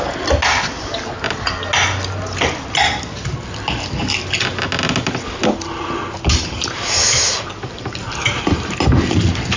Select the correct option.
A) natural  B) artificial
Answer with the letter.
A